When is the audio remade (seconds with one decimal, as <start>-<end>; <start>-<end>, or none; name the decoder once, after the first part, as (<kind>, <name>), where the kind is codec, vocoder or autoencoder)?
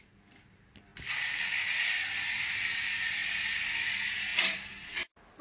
none